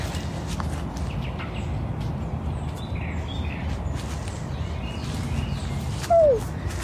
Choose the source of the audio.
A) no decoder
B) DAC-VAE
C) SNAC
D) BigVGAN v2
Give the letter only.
A